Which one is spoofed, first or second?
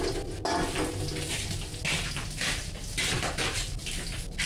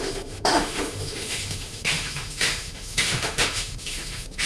second